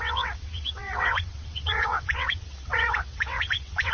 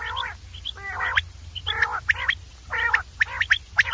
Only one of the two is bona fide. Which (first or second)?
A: second